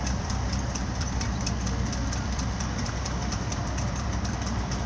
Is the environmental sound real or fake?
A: fake